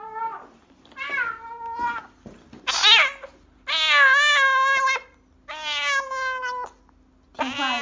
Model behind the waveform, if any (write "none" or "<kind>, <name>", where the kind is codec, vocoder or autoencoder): none